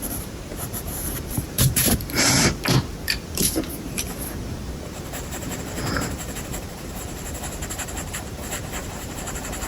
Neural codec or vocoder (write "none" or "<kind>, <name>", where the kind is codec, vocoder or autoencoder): vocoder, BigVGAN v2